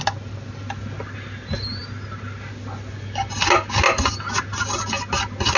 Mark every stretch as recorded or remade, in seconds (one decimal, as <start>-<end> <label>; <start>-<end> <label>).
0.0-5.6 recorded